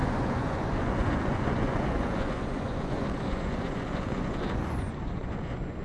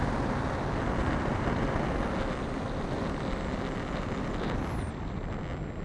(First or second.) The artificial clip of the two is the first